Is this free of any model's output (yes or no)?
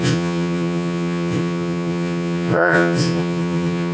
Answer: no